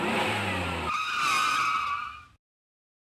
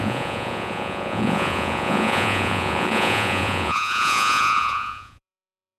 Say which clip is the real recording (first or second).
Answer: first